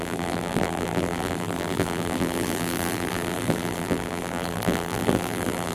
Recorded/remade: remade